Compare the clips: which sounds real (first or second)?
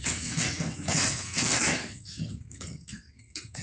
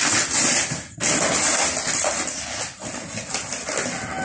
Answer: second